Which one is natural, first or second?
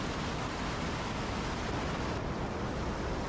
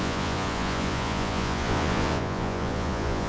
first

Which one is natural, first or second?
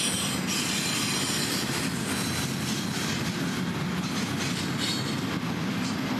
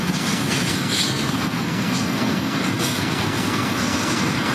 first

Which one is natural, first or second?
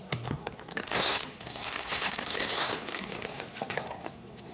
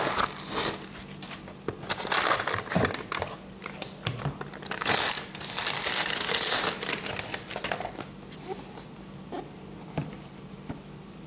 second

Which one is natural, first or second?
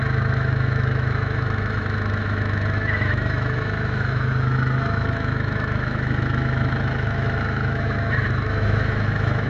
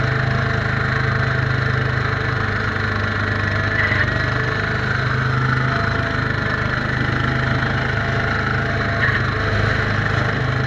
second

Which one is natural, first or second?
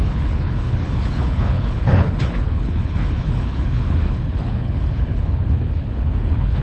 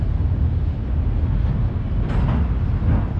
second